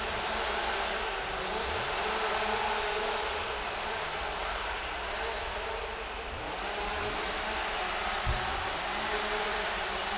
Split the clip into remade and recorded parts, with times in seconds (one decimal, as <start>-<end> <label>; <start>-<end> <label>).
0.0-10.2 recorded